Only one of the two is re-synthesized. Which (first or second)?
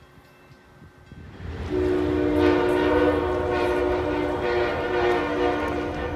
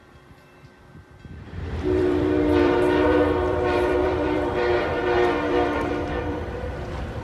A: second